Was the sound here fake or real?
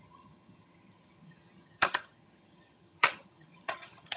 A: fake